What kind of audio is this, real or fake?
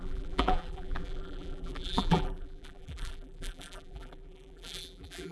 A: fake